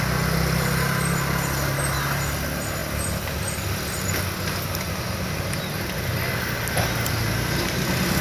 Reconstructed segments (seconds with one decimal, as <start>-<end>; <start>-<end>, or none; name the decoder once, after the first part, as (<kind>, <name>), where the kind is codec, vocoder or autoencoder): none